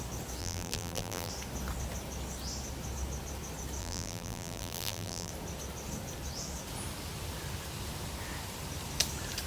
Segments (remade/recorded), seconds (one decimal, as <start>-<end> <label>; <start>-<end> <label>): 0.0-0.4 recorded; 0.4-1.3 remade; 1.3-3.8 recorded; 3.8-5.3 remade; 5.3-9.5 recorded